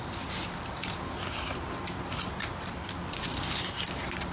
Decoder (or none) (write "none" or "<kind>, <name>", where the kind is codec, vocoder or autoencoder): vocoder, BigVGAN v2